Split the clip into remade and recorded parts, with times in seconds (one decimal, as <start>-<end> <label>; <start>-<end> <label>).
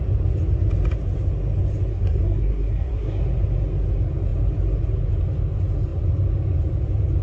0.0-1.9 recorded; 1.9-3.2 remade; 3.2-7.2 recorded